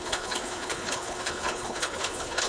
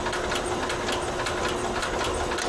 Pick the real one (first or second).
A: second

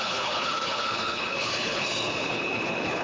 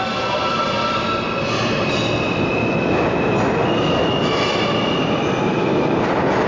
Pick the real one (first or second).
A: second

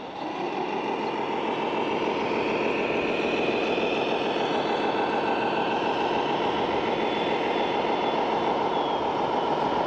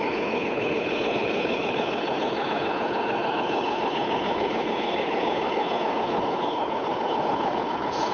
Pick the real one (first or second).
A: first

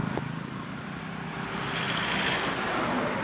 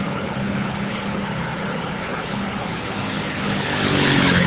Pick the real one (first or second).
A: first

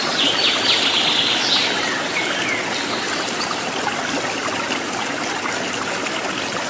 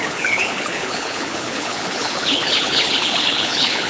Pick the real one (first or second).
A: first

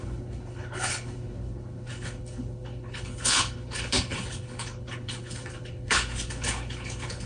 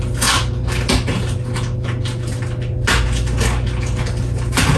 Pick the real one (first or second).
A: second